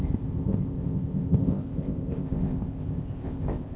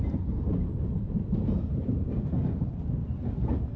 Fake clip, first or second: first